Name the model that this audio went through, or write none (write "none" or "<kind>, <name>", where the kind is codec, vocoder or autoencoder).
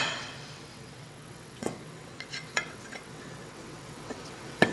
vocoder, WaveNeXt